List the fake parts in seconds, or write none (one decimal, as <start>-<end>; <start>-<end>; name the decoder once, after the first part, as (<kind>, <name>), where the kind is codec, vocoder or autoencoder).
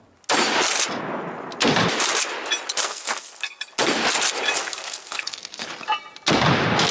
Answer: 2.8-3.6 (codec, SNAC); 4.6-5.7